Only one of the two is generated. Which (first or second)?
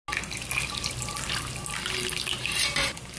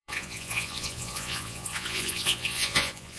second